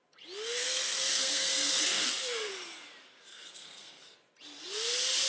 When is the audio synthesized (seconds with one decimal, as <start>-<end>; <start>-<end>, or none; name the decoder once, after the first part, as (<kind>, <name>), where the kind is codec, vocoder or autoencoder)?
0.6-2.5 (codec, SNAC); 3.3-4.0